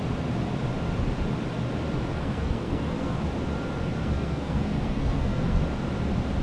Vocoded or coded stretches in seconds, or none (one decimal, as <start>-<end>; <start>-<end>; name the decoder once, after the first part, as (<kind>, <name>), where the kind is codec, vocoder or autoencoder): 2.1-3.2 (codec, SNAC); 4.0-5.6